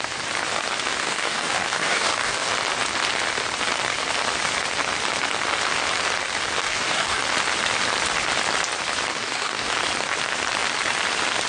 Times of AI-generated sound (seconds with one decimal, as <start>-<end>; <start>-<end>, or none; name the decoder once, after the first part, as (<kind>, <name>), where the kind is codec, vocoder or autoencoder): 1.0-2.5 (codec, DAC); 6.6-7.2; 9.1-9.7